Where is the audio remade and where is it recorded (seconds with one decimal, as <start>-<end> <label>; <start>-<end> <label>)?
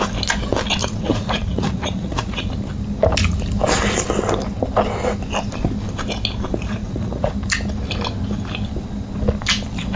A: 0.0-0.8 recorded; 0.8-2.5 remade; 2.5-6.5 recorded; 6.5-7.3 remade; 7.3-10.0 recorded